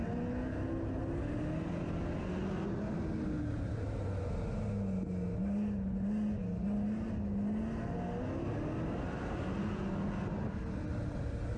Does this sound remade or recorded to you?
recorded